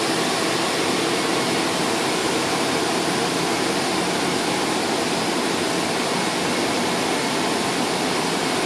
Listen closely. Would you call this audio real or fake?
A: real